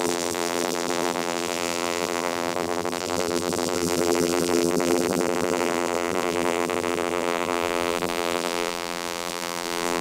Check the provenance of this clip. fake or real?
fake